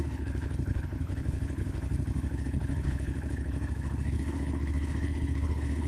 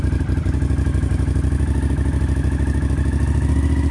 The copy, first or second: first